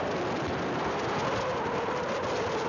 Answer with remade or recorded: recorded